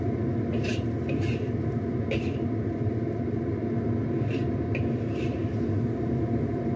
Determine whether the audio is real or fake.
real